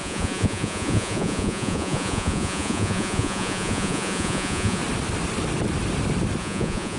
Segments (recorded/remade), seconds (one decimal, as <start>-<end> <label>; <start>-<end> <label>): 0.0-4.8 remade; 4.8-6.4 recorded; 6.4-7.0 remade